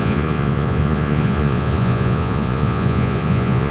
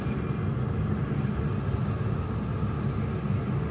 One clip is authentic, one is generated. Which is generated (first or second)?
first